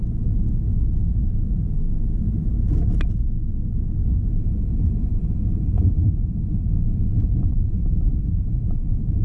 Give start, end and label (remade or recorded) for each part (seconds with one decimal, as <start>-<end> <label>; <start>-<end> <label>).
0.0-4.3 recorded; 4.3-9.2 remade